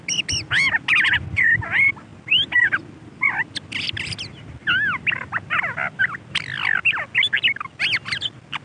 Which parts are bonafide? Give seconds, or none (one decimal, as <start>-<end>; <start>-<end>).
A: 0.0-8.6